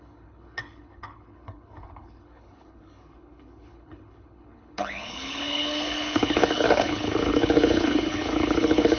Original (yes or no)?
no